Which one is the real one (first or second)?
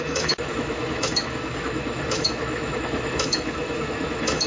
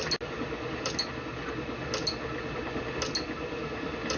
second